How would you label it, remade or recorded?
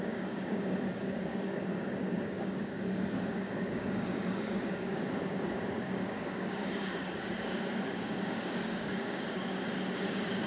remade